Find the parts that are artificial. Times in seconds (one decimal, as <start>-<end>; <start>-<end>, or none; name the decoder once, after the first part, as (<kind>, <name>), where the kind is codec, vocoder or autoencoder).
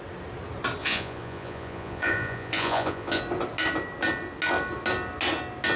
0.8-3.2 (vocoder, Vocos)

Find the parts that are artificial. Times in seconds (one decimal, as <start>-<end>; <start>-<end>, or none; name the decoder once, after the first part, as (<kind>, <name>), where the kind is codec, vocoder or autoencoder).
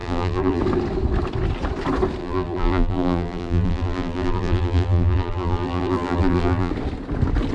0.0-0.6 (vocoder, BigVGAN v2); 2.2-6.7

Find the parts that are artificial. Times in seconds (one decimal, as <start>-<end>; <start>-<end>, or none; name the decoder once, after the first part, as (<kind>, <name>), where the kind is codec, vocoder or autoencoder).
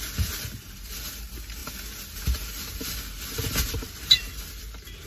none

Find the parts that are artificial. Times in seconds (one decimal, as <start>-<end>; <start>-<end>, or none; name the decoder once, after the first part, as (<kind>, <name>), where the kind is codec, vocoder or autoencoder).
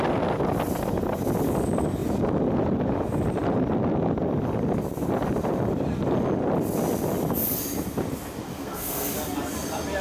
8.5-9.1 (codec, SNAC)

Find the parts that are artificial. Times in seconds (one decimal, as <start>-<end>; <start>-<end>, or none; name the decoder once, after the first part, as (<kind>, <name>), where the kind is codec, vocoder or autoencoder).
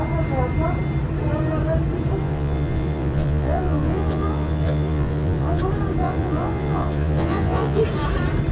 2.2-5.6 (vocoder, Vocos); 6.0-7.8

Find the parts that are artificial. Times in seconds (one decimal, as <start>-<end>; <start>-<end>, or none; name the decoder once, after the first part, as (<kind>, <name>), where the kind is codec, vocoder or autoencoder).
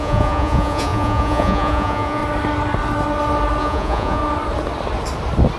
0.0-2.2 (vocoder, Vocos); 3.6-4.2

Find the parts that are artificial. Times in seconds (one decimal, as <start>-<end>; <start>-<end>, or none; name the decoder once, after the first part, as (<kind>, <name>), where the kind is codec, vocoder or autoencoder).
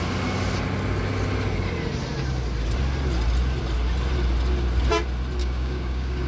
5.4-6.3 (codec, DAC)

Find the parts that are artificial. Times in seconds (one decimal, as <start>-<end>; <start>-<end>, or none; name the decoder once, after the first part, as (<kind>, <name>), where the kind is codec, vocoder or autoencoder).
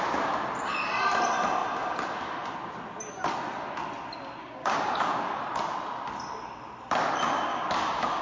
4.4-5.4 (codec, DAC); 7.5-8.2